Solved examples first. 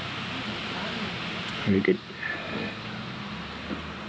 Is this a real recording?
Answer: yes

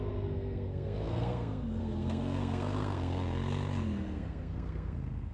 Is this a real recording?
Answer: no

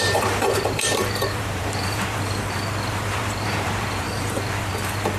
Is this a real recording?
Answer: no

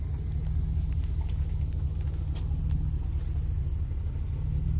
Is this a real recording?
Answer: yes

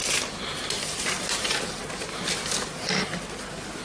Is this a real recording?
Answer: yes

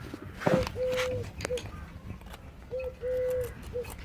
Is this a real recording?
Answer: yes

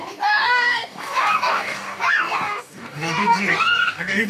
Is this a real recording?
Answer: no